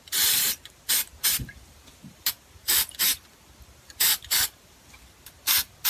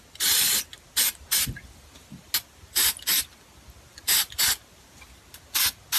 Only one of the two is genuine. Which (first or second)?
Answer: second